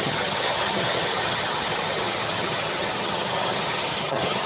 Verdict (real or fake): fake